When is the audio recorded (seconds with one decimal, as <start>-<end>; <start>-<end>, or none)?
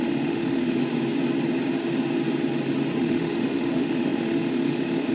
0.8-3.0